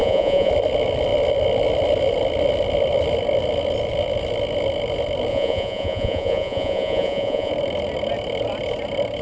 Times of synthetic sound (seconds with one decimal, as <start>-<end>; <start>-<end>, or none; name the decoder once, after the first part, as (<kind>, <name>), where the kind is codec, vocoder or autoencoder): 0.0-0.5 (vocoder, Vocos); 5.3-7.5